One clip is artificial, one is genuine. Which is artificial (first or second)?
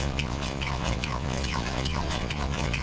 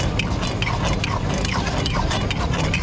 first